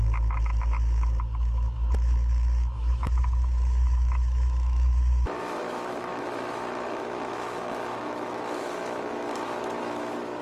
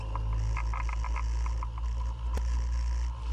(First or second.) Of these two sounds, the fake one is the first